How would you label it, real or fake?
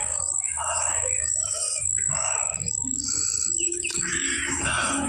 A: fake